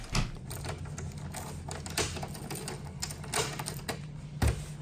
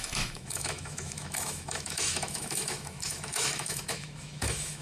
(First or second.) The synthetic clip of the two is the second